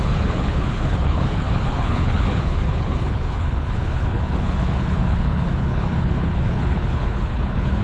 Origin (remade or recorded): remade